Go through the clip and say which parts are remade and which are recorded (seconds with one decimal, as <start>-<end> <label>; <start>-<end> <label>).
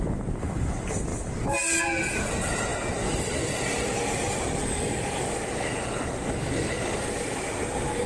0.0-8.1 recorded